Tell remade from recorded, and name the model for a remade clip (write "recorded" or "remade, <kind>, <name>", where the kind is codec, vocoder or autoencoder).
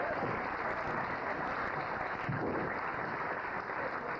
recorded